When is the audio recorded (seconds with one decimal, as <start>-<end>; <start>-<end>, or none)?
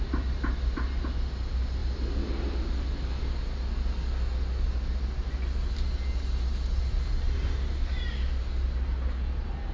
0.0-9.7